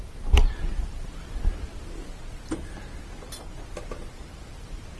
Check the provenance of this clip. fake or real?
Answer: real